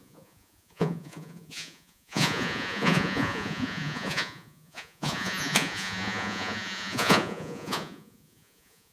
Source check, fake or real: fake